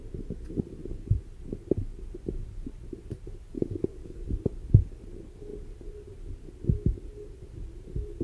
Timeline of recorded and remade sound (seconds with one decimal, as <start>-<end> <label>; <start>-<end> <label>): 0.0-3.5 recorded; 3.5-4.2 remade; 4.2-8.2 recorded